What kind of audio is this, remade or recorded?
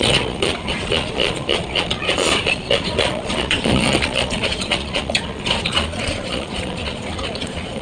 remade